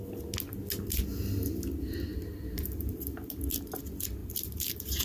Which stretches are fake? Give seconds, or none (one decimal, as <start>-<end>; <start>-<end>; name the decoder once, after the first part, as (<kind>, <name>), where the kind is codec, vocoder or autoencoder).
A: 2.1-3.4 (vocoder, BigVGAN v2); 4.2-5.0